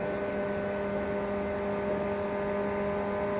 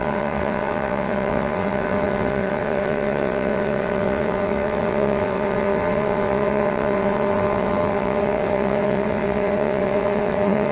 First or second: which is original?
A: first